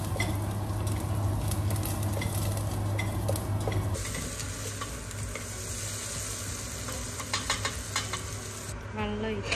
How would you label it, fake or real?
real